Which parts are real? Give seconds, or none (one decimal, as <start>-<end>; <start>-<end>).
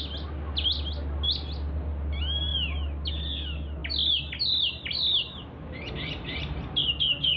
0.0-7.4